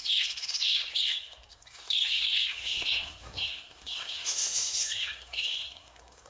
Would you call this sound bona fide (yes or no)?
no